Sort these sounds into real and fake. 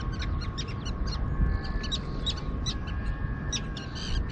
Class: real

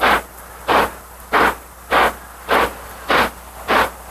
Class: fake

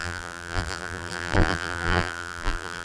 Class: fake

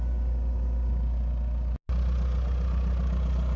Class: real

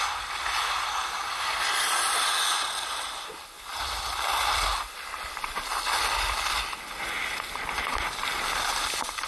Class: real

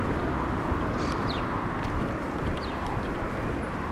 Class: fake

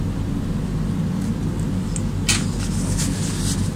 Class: real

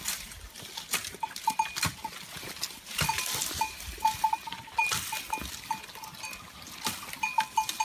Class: real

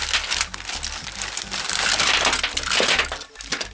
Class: real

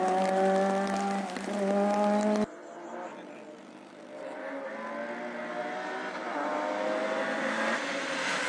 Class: real